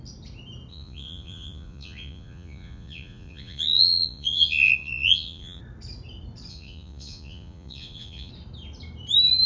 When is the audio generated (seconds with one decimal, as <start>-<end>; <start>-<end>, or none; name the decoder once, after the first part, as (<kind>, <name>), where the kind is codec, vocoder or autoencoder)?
0.7-5.6 (vocoder, Vocos); 6.5-8.3